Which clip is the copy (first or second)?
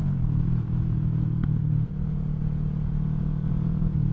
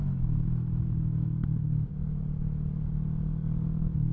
first